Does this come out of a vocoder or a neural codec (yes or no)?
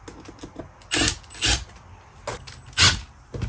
no